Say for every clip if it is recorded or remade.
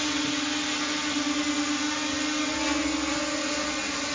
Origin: recorded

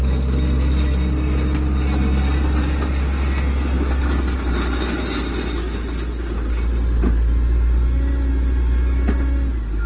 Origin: recorded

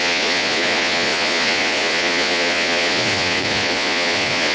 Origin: remade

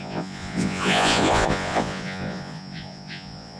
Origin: remade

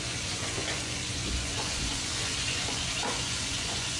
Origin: remade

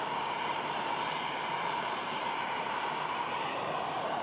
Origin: remade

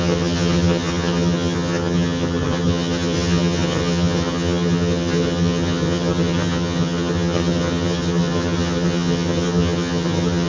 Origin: remade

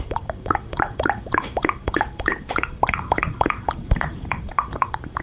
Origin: remade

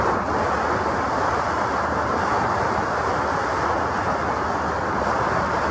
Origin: recorded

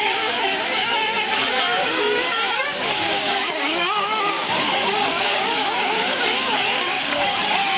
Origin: remade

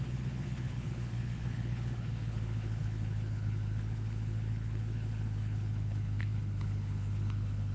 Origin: remade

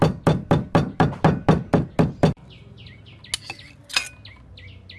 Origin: recorded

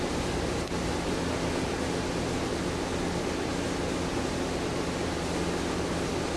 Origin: recorded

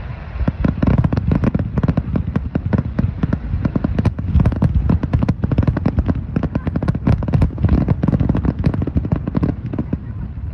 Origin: recorded